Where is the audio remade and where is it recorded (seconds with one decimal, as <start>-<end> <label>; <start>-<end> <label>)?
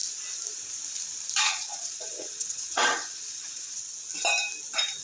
0.0-1.4 recorded; 1.4-3.8 remade; 3.8-5.0 recorded